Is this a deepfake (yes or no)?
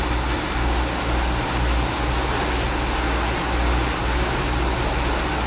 no